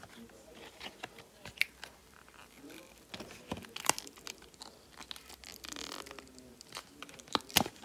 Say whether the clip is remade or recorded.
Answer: recorded